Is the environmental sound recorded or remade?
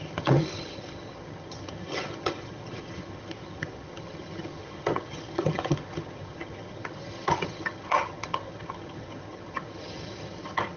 remade